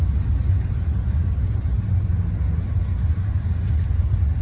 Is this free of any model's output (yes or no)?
yes